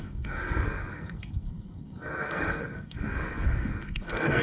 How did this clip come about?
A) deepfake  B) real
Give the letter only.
A